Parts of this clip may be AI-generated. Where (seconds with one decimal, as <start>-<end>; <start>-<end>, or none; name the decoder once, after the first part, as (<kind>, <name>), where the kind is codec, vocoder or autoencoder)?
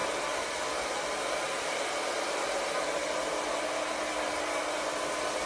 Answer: none